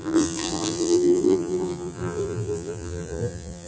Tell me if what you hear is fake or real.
fake